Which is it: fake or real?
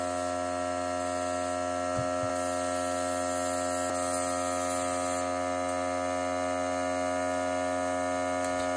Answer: real